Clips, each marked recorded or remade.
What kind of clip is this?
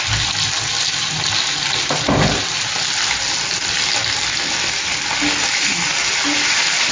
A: recorded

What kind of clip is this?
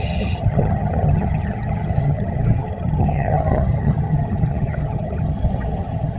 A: remade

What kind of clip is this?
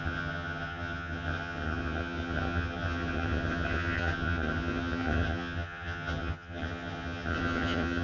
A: remade